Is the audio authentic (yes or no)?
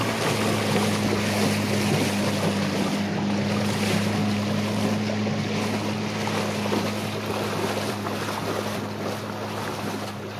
yes